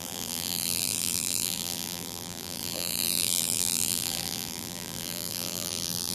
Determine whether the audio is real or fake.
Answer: fake